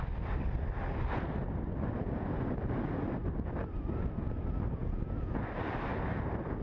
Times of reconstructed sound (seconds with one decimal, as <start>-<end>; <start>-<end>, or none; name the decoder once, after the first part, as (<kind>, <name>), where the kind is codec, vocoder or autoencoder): 4.8-5.4 (vocoder, Vocos)